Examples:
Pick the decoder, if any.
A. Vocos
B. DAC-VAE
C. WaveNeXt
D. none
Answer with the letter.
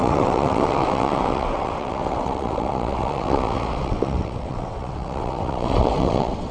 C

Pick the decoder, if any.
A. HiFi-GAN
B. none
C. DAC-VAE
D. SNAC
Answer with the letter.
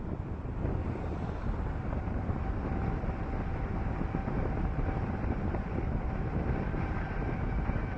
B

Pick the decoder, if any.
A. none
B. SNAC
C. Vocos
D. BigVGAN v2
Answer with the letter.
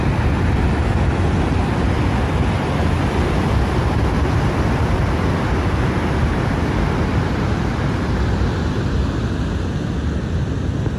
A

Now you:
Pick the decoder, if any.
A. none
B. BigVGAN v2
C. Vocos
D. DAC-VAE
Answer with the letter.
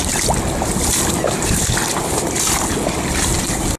A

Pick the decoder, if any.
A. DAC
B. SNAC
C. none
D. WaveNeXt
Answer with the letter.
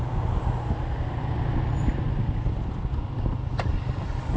C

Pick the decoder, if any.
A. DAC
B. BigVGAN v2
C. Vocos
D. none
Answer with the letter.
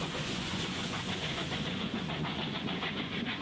C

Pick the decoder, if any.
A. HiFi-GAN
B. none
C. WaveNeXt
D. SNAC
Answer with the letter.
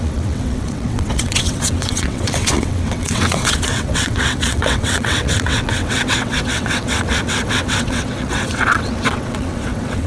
C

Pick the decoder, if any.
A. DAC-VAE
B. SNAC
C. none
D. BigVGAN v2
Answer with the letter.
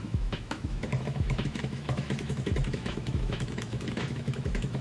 A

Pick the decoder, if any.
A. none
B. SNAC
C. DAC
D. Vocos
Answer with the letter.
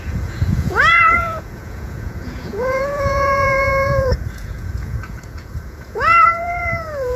D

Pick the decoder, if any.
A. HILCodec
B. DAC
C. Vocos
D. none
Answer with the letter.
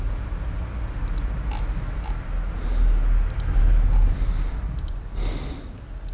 D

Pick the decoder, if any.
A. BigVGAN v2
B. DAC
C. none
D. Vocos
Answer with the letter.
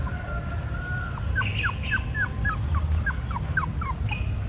C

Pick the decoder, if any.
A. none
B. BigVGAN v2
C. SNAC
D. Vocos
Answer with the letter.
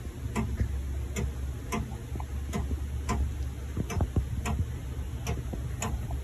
A